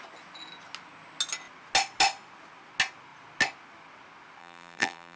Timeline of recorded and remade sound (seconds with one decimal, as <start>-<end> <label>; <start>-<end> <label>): 0.0-4.4 recorded; 4.4-5.2 remade